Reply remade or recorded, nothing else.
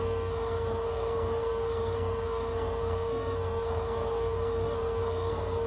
remade